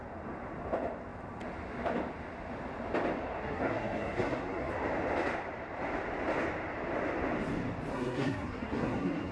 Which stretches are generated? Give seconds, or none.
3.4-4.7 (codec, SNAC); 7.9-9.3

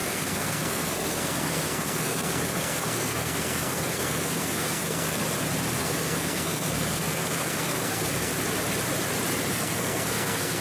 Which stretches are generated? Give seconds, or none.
0.0-5.2 (codec, SNAC); 5.8-8.3; 9.5-10.6

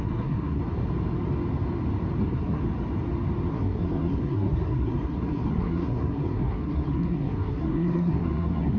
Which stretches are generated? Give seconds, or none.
0.0-0.6 (codec, SNAC); 2.2-2.6; 3.5-8.8

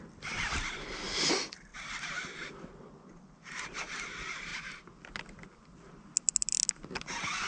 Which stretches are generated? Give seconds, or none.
none

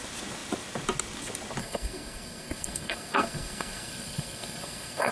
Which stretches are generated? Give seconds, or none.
1.6-5.1 (codec, SNAC)

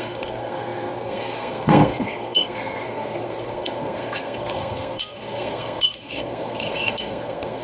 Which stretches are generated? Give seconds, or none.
0.0-7.6 (codec, SNAC)

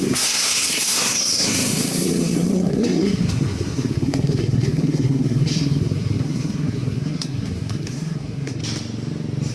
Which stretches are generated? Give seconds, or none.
0.0-8.6 (codec, SNAC)